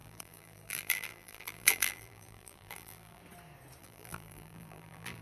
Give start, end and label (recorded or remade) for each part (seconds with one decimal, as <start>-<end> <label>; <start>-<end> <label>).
0.0-3.2 remade; 3.2-3.8 recorded; 3.8-5.2 remade